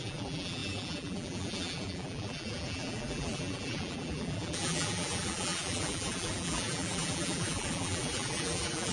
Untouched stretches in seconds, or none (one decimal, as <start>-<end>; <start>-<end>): none